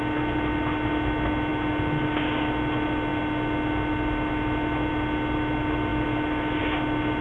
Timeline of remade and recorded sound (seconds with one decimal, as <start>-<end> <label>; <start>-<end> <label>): 0.0-7.2 recorded